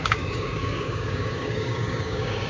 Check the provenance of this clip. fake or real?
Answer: fake